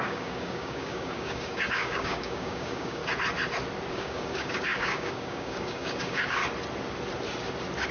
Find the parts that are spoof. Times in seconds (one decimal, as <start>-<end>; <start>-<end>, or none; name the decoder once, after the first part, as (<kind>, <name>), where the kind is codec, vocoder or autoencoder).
0.0-3.0 (codec, DAC); 3.9-6.4